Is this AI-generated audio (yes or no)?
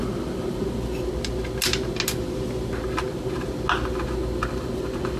no